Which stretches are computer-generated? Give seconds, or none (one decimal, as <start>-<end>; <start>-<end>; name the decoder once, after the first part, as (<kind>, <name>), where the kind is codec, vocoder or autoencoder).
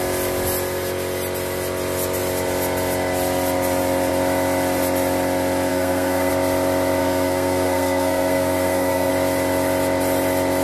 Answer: 5.7-6.3 (codec, SNAC); 7.0-9.1